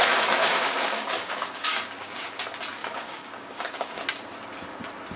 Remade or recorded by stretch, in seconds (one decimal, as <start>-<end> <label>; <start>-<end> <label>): 0.0-0.4 recorded; 0.4-2.4 remade; 2.4-2.8 recorded; 2.8-4.0 remade; 4.0-5.2 recorded